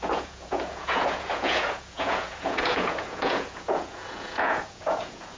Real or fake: fake